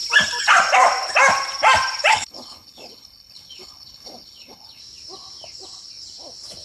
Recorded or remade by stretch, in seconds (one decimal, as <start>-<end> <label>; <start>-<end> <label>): 0.0-2.1 recorded; 2.1-4.8 remade; 4.8-6.6 recorded